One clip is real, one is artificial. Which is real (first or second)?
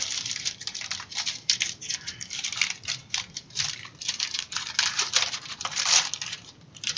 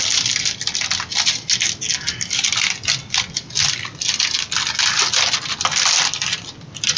second